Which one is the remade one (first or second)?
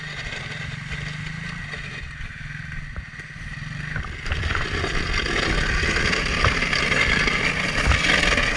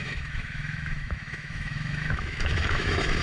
second